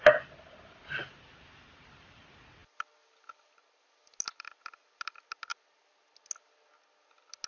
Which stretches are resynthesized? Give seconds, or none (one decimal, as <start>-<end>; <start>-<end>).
none